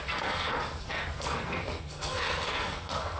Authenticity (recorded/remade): remade